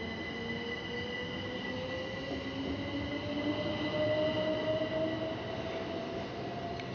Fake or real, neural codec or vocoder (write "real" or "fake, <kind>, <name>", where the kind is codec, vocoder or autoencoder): real